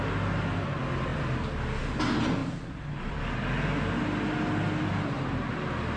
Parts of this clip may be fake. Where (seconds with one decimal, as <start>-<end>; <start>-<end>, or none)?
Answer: 2.4-3.2; 4.9-5.5